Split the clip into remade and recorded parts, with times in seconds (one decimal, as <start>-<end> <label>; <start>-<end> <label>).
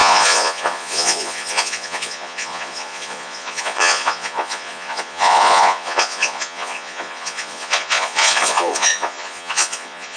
0.0-10.2 remade